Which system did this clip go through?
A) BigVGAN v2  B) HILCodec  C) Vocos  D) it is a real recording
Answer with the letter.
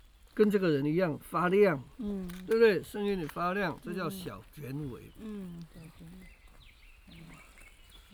D